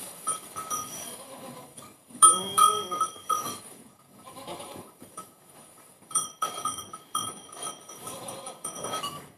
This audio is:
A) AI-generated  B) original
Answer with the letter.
A